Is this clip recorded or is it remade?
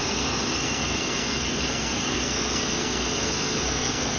remade